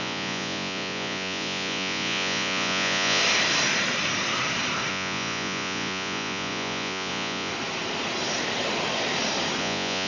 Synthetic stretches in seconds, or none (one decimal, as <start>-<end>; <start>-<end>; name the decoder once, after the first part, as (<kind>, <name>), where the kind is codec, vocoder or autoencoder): 0.0-3.2 (vocoder, Vocos); 4.9-7.5; 9.6-10.1